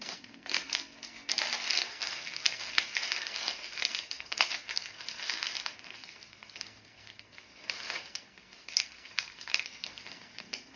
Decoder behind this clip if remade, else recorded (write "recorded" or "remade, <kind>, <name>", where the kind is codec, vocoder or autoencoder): remade, codec, SNAC